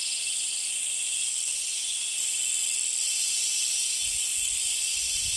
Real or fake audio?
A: real